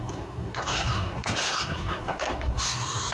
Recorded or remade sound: remade